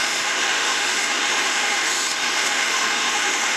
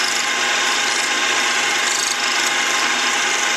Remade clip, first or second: first